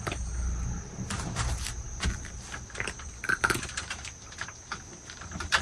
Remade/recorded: recorded